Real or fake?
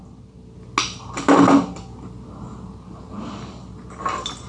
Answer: real